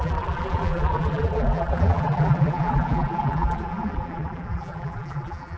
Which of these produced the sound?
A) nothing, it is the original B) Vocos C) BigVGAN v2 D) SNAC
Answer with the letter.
C